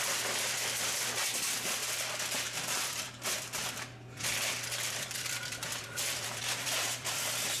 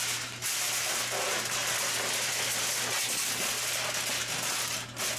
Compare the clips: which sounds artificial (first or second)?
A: first